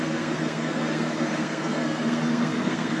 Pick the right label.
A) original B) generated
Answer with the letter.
B